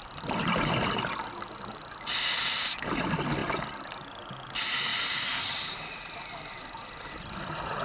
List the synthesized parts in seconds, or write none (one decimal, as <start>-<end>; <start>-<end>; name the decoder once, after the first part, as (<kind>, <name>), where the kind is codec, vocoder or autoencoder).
4.9-5.7 (vocoder, BigVGAN v2)